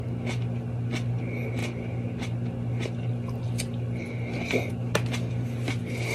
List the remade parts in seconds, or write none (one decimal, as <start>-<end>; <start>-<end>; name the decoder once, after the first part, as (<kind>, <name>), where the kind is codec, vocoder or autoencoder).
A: none